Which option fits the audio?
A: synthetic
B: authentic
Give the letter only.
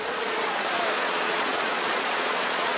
A